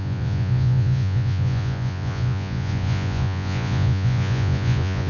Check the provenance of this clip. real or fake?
fake